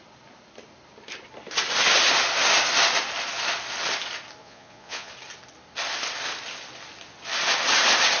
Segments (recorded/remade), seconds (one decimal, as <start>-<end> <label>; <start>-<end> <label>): 0.0-4.4 recorded; 4.4-5.1 remade; 5.1-8.2 recorded